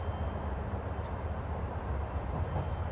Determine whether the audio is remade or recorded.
remade